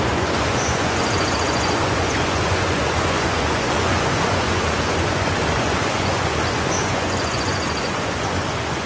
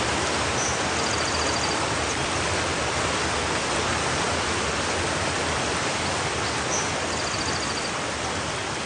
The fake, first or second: first